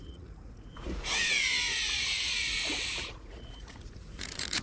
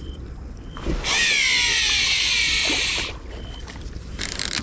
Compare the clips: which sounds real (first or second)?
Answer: second